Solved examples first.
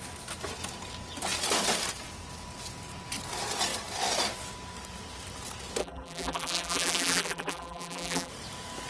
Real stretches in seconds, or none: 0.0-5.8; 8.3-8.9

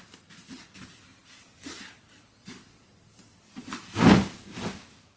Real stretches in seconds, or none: 0.0-5.2

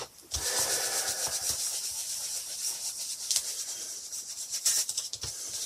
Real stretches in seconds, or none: 0.0-5.7

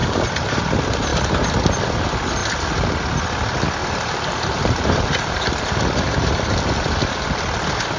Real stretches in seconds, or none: 0.6-3.8; 5.8-8.0

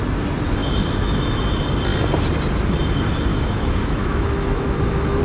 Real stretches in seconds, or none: 0.0-0.6; 1.2-3.3